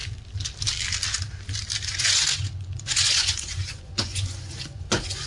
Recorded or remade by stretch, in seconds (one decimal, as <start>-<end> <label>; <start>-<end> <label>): 0.0-1.9 recorded; 1.9-5.3 remade